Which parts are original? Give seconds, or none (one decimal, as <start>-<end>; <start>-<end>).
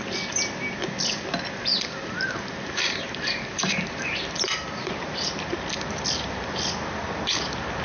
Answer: 0.0-1.7; 4.9-7.8